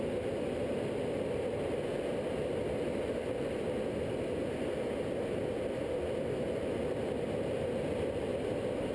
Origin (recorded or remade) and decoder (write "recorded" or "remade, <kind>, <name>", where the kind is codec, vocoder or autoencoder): recorded